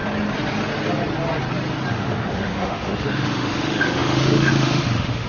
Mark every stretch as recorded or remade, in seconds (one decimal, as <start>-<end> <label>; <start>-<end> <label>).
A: 0.0-1.9 recorded; 1.9-5.3 remade